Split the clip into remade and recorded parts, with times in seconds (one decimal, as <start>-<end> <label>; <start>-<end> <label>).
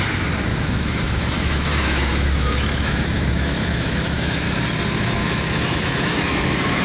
0.0-0.5 recorded; 0.5-4.6 remade; 4.6-5.2 recorded; 5.2-6.8 remade